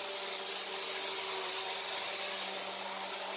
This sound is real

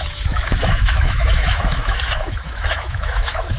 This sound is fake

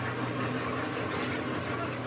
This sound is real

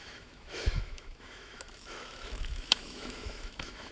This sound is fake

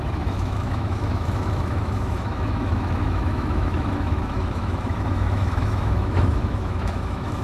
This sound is fake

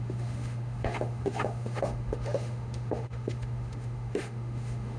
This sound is fake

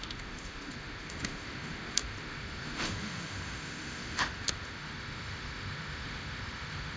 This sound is fake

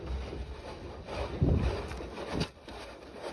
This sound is real